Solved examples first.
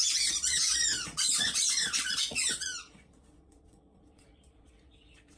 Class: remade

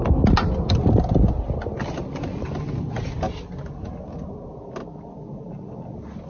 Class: recorded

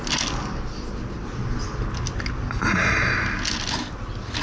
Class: recorded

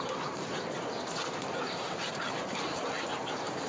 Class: recorded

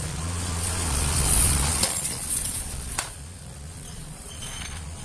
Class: remade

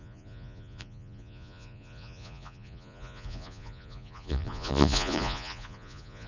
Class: remade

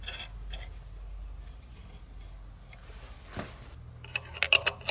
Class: recorded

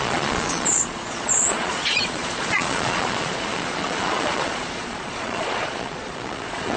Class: remade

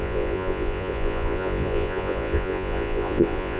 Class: remade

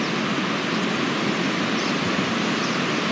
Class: recorded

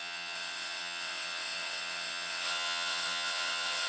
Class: remade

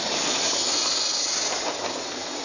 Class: recorded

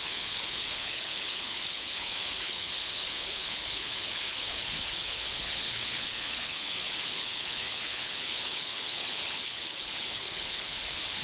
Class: remade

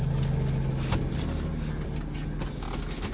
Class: recorded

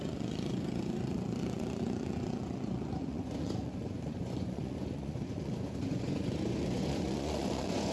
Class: remade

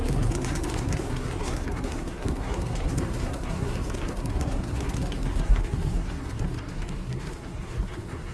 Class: remade